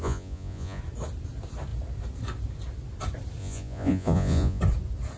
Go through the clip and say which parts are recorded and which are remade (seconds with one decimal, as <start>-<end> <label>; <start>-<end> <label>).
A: 0.0-0.8 remade; 0.8-3.4 recorded; 3.4-4.6 remade; 4.6-5.2 recorded